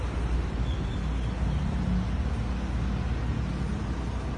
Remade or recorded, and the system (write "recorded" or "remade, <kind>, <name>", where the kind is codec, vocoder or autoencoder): recorded